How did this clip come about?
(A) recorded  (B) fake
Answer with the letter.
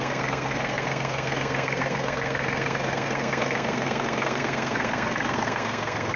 B